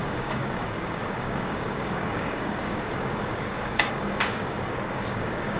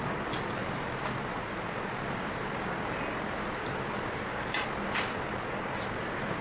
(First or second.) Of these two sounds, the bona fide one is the second